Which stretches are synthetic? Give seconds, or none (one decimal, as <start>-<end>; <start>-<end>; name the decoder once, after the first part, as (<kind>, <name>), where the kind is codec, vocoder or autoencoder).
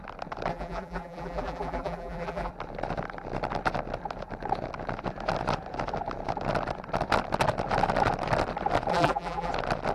0.5-2.5 (vocoder, BigVGAN v2); 8.9-9.5